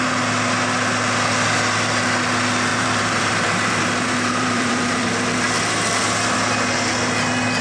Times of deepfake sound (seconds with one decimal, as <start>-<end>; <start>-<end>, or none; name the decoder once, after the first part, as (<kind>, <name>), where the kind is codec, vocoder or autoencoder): 2.7-5.1 (vocoder, BigVGAN v2)